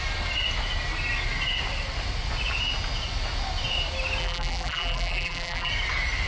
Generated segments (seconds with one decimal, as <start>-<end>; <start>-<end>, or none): 4.2-5.7